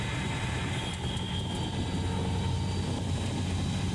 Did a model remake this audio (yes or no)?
no